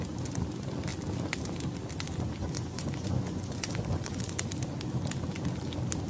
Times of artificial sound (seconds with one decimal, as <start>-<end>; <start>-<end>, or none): 2.4-4.4